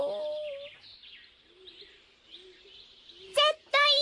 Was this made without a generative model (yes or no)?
yes